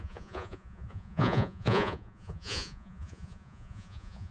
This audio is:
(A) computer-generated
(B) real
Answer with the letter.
A